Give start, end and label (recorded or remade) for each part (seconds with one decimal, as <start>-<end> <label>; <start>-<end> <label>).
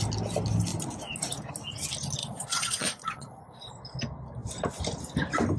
0.0-2.2 recorded; 2.2-3.7 remade; 3.7-5.6 recorded